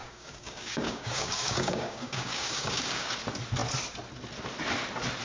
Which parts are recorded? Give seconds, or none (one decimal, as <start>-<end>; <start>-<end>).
3.1-5.2